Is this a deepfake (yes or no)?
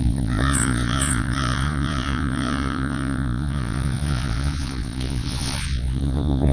yes